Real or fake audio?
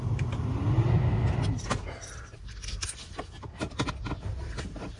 real